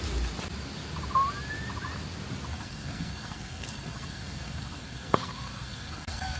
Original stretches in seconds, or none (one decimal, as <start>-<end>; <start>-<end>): 0.0-2.5